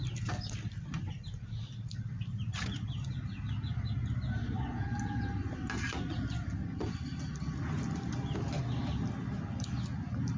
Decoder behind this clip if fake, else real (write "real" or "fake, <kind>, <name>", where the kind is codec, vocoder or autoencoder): real